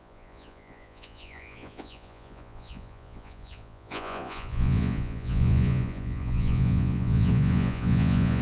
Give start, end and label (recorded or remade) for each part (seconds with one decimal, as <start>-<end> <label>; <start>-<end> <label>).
0.0-8.4 remade